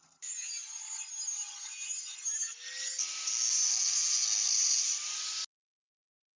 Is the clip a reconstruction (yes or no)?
no